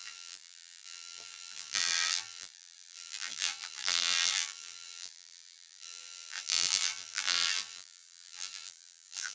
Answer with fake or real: fake